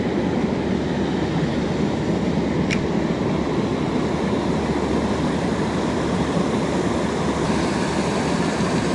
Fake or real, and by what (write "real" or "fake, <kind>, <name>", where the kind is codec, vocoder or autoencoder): real